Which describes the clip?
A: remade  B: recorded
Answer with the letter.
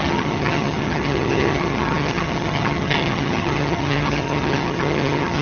A